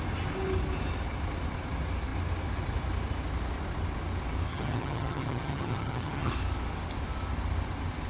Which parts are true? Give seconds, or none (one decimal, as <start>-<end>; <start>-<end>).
0.0-4.5; 6.3-8.1